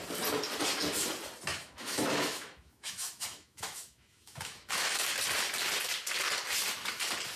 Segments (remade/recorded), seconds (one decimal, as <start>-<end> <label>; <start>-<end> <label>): 0.0-1.5 recorded; 1.5-5.1 remade; 5.1-7.4 recorded